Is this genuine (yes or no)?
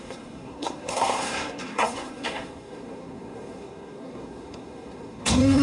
no